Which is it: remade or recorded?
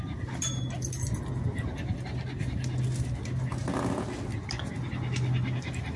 recorded